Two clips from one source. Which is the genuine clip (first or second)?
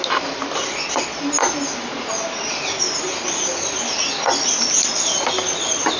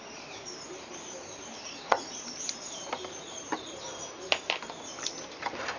first